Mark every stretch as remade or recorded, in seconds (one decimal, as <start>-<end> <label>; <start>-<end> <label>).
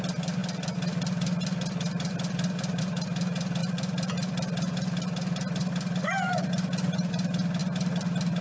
0.0-8.4 recorded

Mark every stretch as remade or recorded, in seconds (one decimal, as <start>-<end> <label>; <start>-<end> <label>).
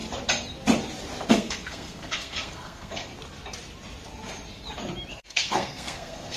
0.0-1.3 recorded; 1.3-3.1 remade; 3.1-5.1 recorded; 5.1-6.4 remade